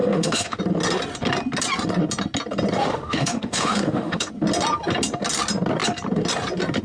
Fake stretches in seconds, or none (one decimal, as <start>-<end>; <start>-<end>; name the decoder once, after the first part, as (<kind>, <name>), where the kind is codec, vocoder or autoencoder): 0.0-0.6 (autoencoder, DAC-VAE); 2.8-4.3

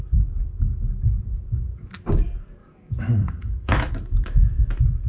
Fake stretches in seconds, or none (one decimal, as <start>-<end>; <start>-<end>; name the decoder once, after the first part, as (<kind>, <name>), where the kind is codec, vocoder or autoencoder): 2.6-4.6 (autoencoder, DAC-VAE)

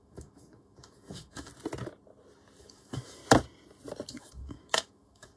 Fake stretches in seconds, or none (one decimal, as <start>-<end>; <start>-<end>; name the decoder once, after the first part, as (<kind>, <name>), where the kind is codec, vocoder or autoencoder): 0.0-1.5 (autoencoder, DAC-VAE); 2.6-3.2; 4.1-5.4